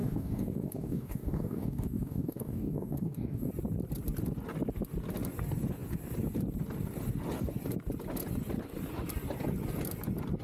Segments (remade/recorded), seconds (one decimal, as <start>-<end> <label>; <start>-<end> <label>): 0.0-3.5 remade; 3.5-10.4 recorded

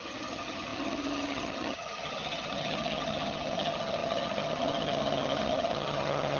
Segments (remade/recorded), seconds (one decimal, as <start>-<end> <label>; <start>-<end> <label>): 0.0-6.4 remade

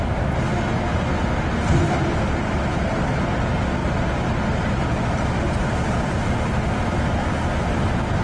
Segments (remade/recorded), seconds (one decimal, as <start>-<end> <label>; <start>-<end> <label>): 0.0-8.2 recorded

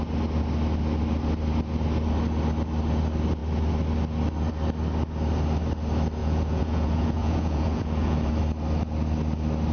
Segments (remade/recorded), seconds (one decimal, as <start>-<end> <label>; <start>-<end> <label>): 0.0-6.2 recorded; 6.2-8.3 remade; 8.3-9.7 recorded

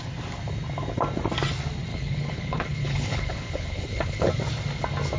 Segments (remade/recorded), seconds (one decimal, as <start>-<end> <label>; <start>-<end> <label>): 0.0-1.9 recorded; 1.9-4.3 remade; 4.3-5.2 recorded